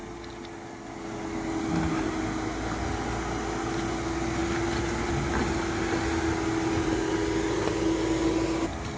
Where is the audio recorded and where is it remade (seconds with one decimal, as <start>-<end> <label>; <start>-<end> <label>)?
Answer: 0.0-9.0 recorded

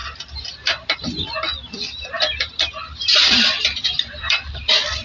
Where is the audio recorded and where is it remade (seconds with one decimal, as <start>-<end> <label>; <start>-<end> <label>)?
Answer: 0.0-0.5 recorded; 0.5-1.5 remade; 1.5-3.6 recorded; 3.6-5.0 remade

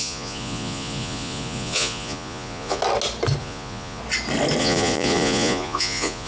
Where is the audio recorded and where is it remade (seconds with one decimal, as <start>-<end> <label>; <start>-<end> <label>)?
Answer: 0.0-2.8 remade; 2.8-3.4 recorded; 3.4-4.0 remade; 4.0-4.6 recorded; 4.6-6.3 remade

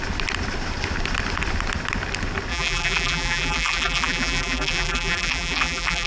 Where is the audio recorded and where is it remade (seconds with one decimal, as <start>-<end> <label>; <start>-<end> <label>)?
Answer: 0.0-2.5 recorded; 2.5-6.1 remade

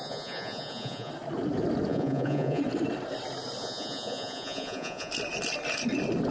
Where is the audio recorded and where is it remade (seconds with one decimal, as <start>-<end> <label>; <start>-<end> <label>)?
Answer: 0.0-1.1 remade; 1.1-1.9 recorded; 1.9-2.6 remade; 2.6-3.6 recorded; 3.6-5.1 remade; 5.1-6.3 recorded

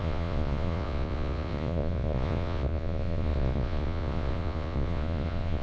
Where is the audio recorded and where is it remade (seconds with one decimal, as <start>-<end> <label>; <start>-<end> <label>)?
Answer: 0.0-5.6 remade

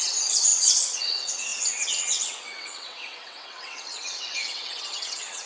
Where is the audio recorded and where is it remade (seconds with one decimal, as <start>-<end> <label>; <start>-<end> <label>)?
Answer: 0.0-5.5 remade